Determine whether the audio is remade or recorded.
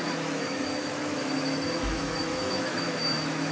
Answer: remade